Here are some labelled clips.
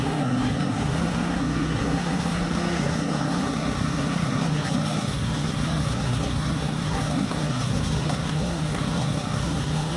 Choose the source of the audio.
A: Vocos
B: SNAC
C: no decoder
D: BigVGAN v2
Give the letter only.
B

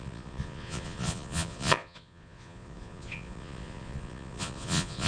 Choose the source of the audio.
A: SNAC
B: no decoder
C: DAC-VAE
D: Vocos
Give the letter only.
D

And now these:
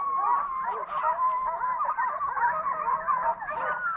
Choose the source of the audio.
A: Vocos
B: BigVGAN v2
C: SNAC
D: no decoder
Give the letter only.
D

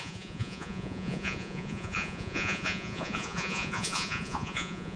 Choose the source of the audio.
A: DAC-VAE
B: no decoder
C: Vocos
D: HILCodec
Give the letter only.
C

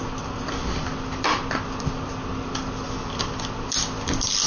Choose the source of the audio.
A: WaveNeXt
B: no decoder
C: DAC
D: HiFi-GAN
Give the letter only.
B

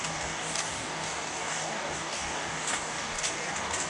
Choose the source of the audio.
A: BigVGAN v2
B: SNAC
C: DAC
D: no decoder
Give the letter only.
C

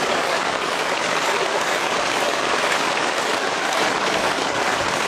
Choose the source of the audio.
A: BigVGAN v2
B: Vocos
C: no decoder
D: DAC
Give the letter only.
D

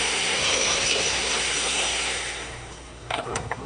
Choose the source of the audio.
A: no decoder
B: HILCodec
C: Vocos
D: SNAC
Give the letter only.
D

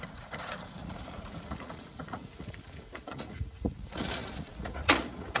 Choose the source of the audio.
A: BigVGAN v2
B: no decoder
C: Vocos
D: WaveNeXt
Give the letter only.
C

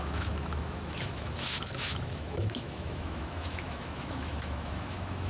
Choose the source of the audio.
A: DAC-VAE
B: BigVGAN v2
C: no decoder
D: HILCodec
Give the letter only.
A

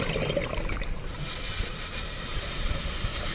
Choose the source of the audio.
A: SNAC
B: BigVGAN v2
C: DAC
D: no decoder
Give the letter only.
D